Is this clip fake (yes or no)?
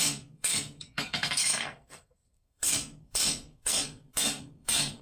yes